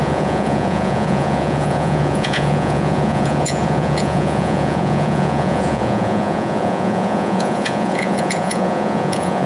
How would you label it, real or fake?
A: fake